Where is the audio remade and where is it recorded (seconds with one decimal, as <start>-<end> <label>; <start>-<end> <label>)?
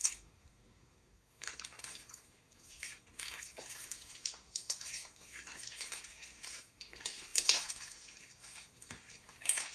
0.0-9.7 remade